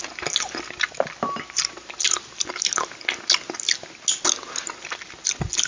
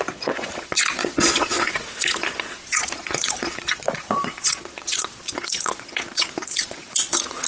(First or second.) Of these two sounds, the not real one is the second